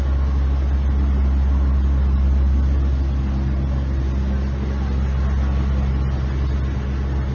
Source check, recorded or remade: recorded